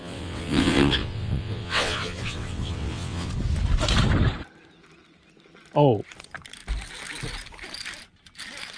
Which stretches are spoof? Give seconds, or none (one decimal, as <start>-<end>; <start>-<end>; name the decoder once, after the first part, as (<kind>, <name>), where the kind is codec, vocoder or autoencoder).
0.0-3.3 (vocoder, WaveNeXt)